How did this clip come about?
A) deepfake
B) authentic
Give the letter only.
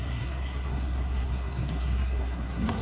A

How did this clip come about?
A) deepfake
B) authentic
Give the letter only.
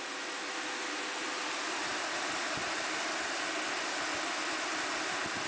B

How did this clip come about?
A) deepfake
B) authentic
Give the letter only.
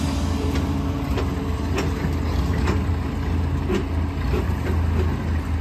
B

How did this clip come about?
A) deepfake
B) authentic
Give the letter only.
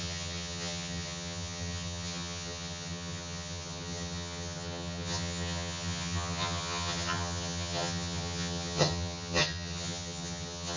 A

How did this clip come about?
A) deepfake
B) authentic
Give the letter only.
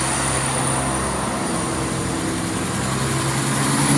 B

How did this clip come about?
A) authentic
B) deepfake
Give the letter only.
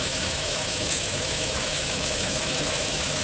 B